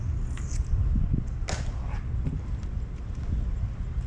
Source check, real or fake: real